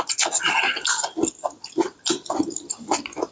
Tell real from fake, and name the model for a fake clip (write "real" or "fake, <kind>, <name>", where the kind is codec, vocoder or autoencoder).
real